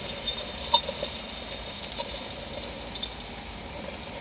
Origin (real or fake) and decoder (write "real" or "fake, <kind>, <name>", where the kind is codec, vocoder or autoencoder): real